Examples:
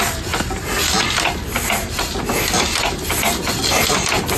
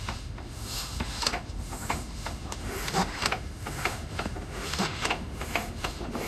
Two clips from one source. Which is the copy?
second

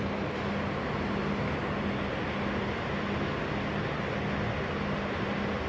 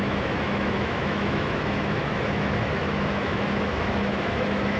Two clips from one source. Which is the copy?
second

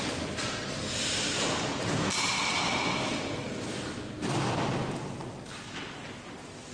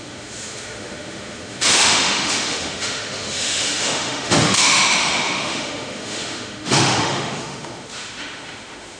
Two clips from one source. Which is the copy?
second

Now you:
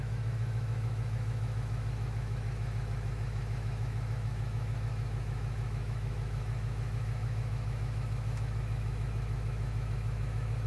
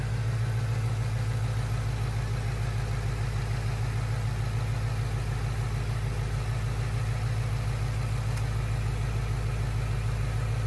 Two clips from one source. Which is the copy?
first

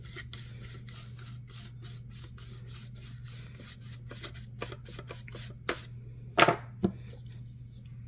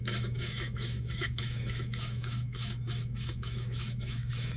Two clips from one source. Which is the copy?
second